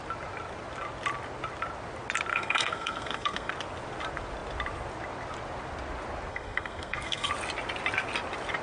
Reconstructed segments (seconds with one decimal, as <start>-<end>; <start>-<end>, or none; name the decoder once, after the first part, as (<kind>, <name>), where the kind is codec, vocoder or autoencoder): 2.3-3.5 (codec, SNAC); 6.3-7.3